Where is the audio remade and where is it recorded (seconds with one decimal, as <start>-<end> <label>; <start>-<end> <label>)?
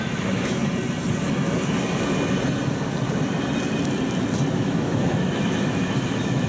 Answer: 0.0-0.6 remade; 0.6-4.5 recorded; 4.5-6.5 remade